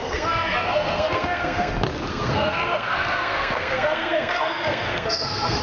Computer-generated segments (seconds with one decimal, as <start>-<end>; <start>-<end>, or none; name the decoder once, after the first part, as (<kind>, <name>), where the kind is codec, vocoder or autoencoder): 0.0-1.7 (codec, SNAC); 2.1-5.6